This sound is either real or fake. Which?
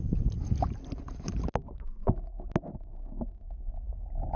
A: real